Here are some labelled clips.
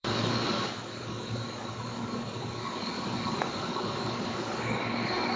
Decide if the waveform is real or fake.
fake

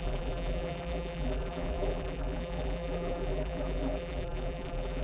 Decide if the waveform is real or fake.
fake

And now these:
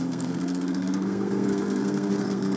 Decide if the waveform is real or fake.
fake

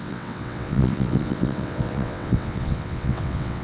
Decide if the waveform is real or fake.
fake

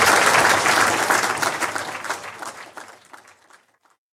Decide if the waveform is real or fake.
fake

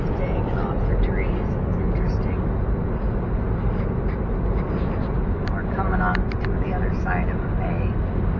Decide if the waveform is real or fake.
real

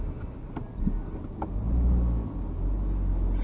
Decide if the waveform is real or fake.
real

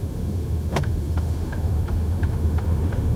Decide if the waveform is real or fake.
fake